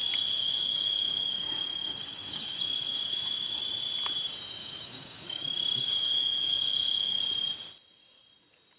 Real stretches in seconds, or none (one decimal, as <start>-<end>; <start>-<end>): 3.6-4.6; 7.2-8.8